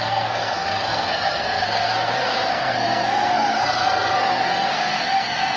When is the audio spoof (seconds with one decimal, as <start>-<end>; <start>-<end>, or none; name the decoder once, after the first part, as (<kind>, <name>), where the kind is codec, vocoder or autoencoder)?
0.0-5.6 (codec, SNAC)

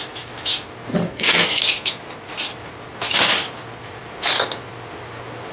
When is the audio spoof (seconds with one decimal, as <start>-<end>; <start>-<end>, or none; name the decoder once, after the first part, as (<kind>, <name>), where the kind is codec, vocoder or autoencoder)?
0.9-1.6 (codec, SNAC)

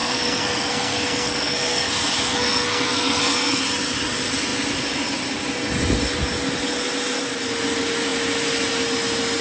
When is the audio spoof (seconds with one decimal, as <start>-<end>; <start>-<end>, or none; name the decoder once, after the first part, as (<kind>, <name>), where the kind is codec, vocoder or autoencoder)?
0.0-1.9 (codec, SNAC); 2.3-3.6

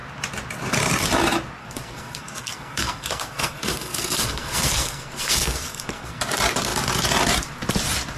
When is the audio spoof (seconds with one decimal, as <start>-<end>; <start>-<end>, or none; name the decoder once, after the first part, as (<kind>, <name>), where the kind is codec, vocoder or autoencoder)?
1.6-6.2 (codec, SNAC)

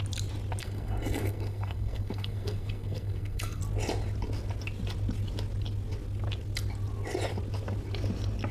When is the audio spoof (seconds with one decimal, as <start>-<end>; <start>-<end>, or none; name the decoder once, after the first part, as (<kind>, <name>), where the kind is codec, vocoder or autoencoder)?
0.6-3.6 (codec, SNAC)

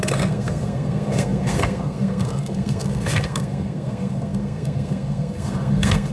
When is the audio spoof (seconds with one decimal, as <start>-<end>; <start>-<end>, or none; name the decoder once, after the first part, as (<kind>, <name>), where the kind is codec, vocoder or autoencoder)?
0.0-6.1 (codec, SNAC)

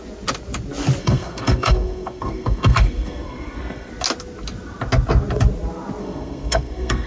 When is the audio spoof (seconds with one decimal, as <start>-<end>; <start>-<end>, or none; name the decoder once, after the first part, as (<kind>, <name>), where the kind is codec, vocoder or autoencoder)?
1.0-3.9 (codec, SNAC); 6.0-7.1